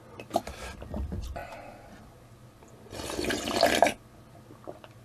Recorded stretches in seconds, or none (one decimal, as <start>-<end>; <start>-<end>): 0.0-5.0

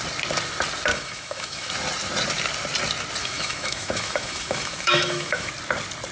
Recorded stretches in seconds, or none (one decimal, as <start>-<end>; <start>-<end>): 0.0-0.9; 1.7-3.2; 5.5-6.1